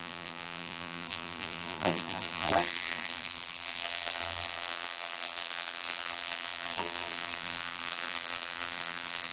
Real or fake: fake